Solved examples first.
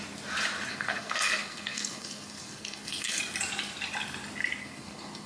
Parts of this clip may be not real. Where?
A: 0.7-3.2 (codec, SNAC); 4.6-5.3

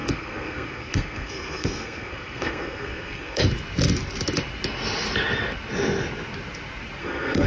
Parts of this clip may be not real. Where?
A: 0.0-3.4 (codec, SNAC); 7.0-7.5